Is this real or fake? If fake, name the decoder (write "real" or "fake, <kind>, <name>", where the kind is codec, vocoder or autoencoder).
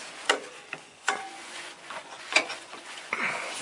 fake, vocoder, Vocos